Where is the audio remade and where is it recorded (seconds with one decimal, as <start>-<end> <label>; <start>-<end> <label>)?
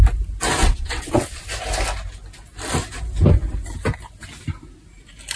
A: 0.0-0.6 recorded; 0.6-1.4 remade; 1.4-5.4 recorded